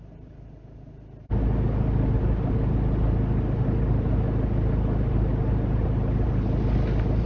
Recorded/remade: recorded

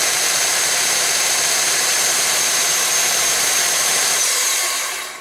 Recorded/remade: remade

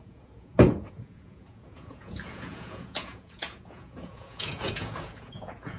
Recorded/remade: remade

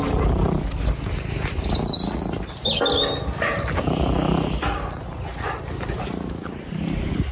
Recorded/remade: recorded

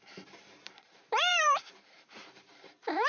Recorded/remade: remade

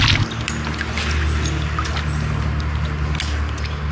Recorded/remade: recorded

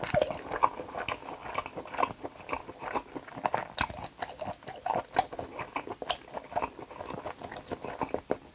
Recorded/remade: recorded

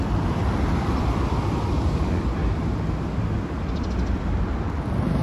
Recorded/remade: recorded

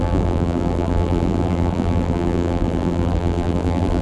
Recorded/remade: remade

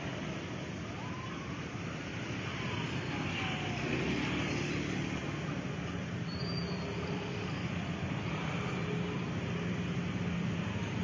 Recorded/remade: recorded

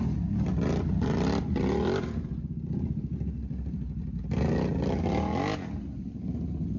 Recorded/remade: recorded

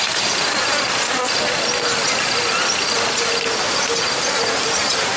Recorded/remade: recorded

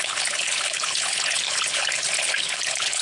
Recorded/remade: remade